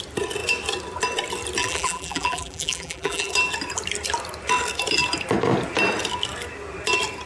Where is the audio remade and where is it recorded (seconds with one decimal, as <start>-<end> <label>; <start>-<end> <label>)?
0.0-1.6 recorded; 1.6-3.3 remade; 3.3-7.3 recorded